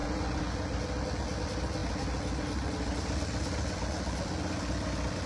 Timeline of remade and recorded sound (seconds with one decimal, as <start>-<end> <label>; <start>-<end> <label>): 0.0-5.3 recorded

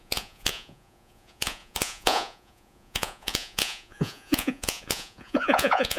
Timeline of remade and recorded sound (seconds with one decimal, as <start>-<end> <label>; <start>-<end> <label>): 0.0-6.0 remade

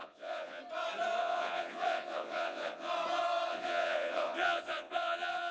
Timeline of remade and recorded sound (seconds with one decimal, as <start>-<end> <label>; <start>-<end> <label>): 0.0-0.6 remade; 0.6-1.2 recorded; 1.2-2.9 remade; 2.9-3.5 recorded; 3.5-5.5 remade

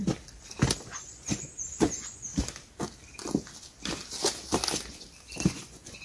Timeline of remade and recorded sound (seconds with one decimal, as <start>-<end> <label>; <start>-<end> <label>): 0.0-0.8 recorded; 0.8-2.3 remade; 2.3-5.5 recorded; 5.5-6.0 remade

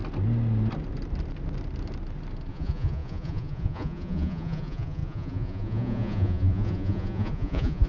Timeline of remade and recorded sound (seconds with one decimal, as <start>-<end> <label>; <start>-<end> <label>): 0.0-2.5 recorded; 2.5-7.9 remade